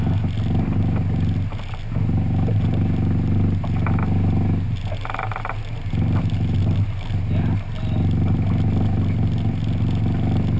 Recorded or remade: recorded